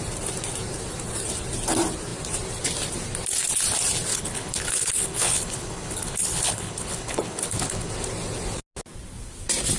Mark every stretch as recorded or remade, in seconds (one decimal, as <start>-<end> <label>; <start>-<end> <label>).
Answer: 0.0-4.1 recorded; 4.1-7.9 remade; 7.9-9.8 recorded